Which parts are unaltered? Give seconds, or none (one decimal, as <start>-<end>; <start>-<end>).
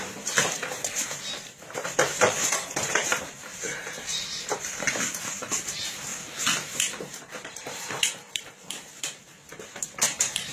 6.1-6.6